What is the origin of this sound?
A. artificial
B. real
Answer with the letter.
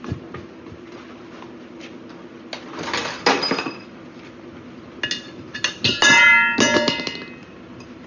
B